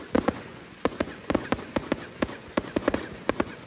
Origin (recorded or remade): remade